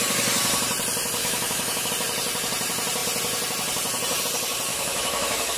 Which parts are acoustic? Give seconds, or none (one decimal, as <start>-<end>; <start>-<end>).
0.0-1.2; 1.9-4.7